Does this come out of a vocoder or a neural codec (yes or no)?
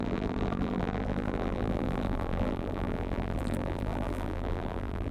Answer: yes